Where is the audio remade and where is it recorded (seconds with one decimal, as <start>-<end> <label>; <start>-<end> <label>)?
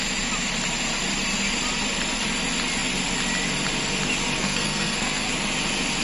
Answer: 0.0-4.4 recorded; 4.4-5.3 remade; 5.3-6.0 recorded